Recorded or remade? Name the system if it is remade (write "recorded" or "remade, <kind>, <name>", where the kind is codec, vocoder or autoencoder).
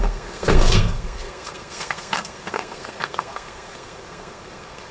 remade, codec, SNAC